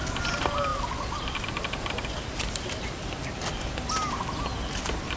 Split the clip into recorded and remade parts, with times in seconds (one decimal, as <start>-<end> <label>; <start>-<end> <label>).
0.0-5.2 recorded